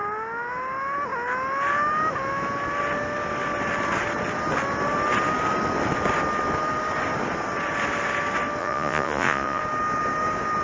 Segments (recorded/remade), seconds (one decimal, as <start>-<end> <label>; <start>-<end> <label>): 0.0-8.6 recorded; 8.6-9.6 remade; 9.6-10.6 recorded